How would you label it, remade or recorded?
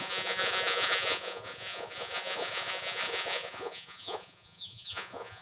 remade